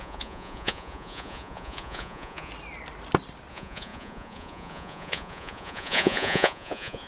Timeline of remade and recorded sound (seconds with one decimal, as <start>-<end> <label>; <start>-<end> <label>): 0.0-2.5 remade; 2.5-3.5 recorded; 3.5-7.1 remade